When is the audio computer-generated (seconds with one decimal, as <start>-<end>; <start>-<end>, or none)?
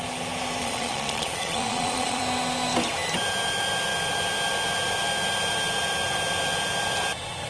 0.6-2.2